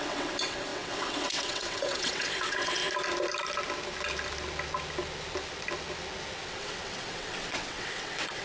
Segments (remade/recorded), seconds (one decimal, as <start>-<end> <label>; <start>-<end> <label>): 0.0-2.8 remade; 2.8-6.5 recorded; 6.5-8.4 remade